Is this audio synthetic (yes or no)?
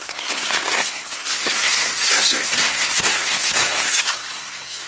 yes